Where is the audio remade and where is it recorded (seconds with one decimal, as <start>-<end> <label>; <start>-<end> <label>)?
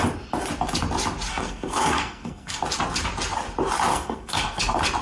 0.0-1.3 recorded; 1.3-2.6 remade; 2.6-3.9 recorded; 3.9-4.6 remade; 4.6-5.0 recorded